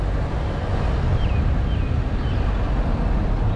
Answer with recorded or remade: recorded